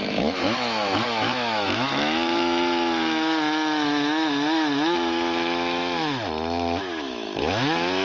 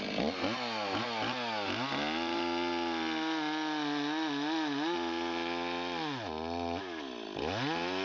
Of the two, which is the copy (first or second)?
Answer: first